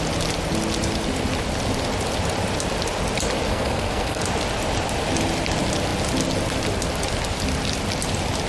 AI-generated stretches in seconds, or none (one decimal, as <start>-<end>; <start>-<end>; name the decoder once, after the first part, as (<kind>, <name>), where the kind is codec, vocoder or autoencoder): 3.5-4.2 (codec, SNAC)